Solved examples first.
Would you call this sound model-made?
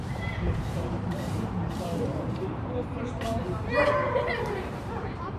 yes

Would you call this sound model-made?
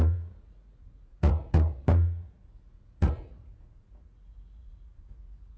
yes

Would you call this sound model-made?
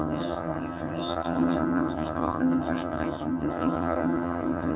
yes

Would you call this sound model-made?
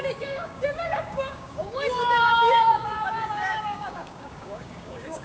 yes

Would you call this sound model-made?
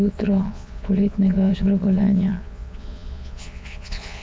yes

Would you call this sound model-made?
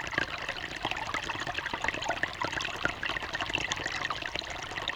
no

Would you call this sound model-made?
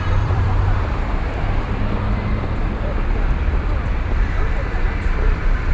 yes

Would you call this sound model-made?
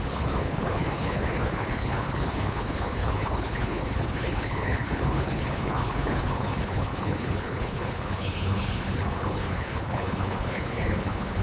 yes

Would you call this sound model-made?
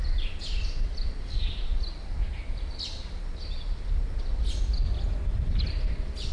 no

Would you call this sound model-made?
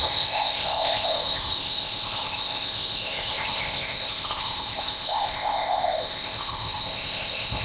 yes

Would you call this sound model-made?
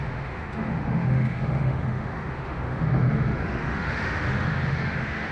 yes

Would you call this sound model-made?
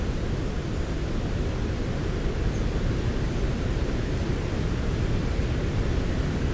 no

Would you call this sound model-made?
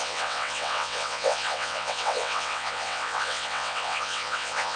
yes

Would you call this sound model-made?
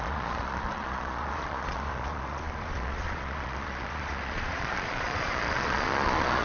yes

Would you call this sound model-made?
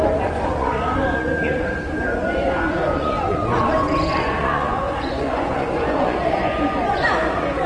yes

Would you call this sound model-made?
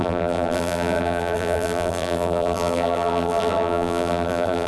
yes